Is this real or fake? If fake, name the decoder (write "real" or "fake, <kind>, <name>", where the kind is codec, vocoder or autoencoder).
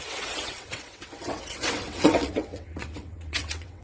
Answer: fake, vocoder, WaveNeXt